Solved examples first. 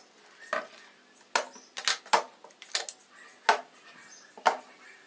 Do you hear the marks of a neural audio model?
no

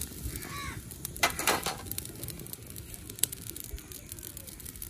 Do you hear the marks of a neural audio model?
no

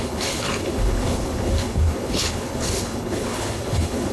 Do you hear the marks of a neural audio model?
yes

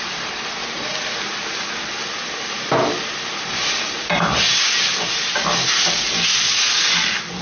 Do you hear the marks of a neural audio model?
no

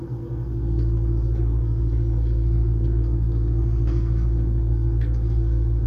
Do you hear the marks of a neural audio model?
yes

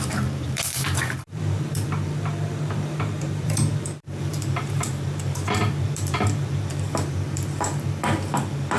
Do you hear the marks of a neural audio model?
yes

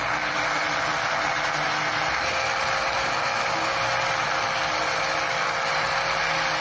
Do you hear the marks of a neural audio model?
no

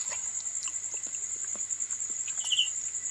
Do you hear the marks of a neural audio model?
no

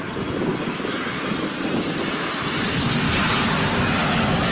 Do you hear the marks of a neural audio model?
no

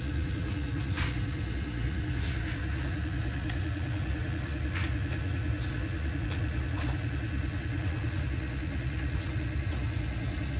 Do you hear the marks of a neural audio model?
yes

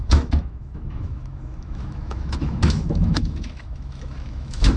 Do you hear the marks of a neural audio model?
yes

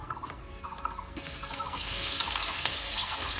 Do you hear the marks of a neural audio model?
yes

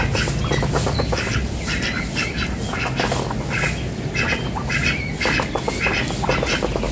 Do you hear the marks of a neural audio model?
no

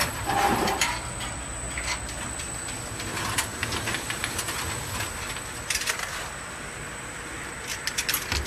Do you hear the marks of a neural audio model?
no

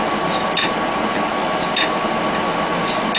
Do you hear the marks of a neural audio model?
no